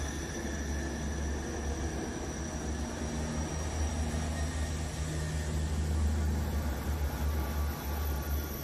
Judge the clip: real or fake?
real